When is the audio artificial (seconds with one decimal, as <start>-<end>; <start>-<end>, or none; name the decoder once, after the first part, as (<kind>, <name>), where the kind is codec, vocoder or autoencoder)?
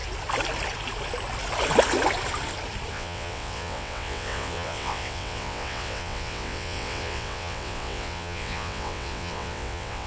2.9-10.1 (vocoder, WaveNeXt)